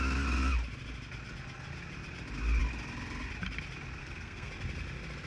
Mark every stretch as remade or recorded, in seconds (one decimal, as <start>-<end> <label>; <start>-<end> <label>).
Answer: 0.0-4.0 recorded; 4.0-4.5 remade; 4.5-5.3 recorded